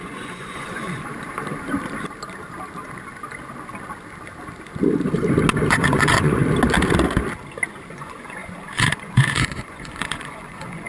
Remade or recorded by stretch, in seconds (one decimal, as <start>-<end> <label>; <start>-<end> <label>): 0.0-1.1 remade; 1.1-5.7 recorded; 5.7-6.4 remade; 6.4-7.9 recorded; 7.9-10.9 remade